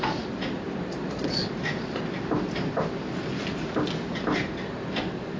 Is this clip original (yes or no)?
yes